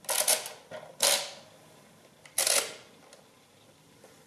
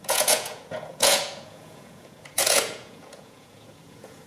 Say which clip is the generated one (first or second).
second